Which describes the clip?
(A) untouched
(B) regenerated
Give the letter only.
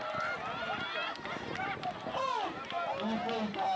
A